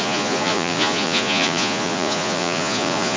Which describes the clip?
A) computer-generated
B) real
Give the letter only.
A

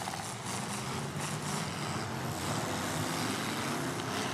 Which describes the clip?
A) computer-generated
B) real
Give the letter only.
B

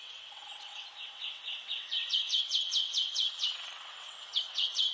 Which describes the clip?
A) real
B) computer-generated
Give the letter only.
B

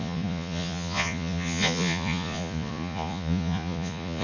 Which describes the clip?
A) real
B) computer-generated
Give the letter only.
B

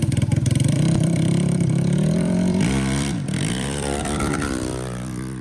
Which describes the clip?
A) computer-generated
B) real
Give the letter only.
A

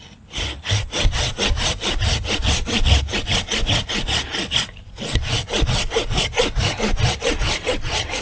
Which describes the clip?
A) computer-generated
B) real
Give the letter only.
B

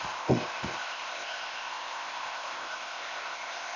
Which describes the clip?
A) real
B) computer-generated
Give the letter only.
B